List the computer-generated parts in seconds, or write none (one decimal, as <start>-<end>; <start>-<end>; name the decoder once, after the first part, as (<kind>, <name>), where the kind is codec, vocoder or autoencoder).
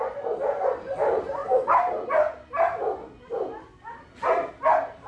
none